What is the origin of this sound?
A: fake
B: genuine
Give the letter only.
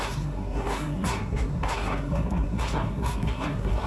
A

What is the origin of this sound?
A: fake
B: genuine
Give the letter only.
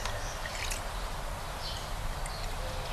B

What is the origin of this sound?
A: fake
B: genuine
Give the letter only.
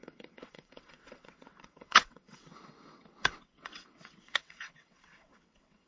A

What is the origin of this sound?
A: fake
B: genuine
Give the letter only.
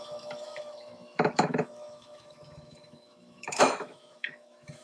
A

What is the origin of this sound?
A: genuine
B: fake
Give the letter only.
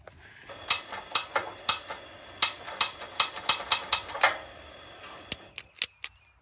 A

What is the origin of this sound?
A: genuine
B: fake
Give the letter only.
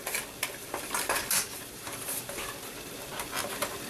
B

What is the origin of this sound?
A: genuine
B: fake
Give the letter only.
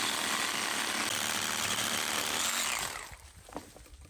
A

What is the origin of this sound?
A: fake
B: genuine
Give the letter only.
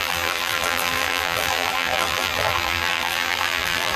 A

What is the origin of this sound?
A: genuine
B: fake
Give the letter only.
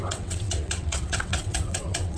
B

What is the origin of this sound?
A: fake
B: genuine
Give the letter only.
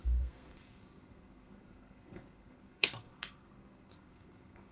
A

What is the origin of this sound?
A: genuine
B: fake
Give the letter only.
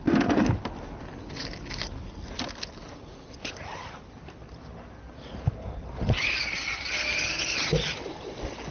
A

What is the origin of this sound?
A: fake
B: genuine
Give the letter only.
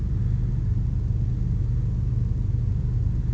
B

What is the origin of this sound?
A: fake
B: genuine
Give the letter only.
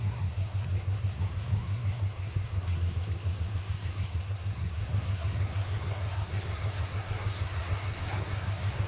A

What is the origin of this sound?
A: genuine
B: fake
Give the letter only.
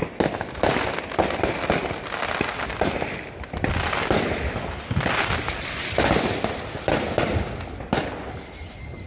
A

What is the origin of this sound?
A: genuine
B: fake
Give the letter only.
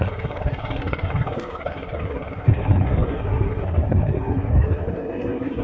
B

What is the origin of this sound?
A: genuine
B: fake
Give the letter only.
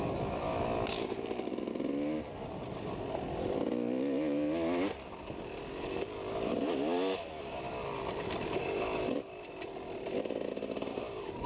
A